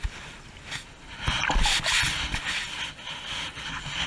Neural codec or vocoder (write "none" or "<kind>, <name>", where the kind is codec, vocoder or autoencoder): none